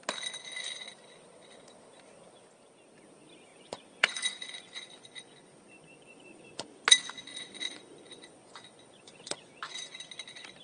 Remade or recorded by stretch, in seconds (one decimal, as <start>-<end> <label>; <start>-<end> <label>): 0.0-3.5 recorded; 3.5-6.8 remade; 6.8-7.3 recorded; 7.3-9.6 remade; 9.6-10.6 recorded